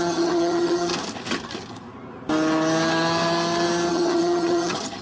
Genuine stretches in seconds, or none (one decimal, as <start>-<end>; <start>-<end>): 0.9-3.9